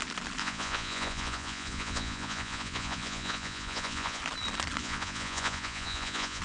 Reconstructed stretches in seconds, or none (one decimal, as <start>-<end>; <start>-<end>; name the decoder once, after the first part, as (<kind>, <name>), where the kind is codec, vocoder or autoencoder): 0.4-4.2 (vocoder, Vocos); 4.8-6.4